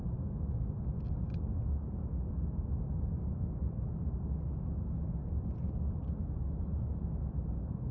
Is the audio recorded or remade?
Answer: recorded